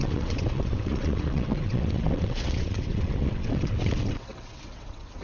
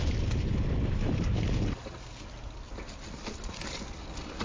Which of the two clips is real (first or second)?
second